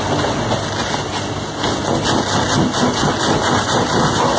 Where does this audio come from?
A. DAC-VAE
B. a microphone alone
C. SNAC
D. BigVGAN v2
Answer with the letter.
B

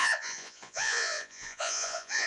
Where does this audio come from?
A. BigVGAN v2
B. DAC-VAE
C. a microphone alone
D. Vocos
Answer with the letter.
D